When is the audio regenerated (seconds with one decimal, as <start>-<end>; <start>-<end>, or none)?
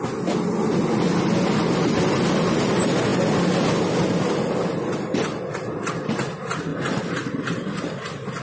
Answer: none